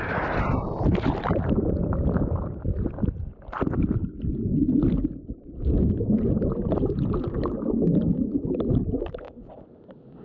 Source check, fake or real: real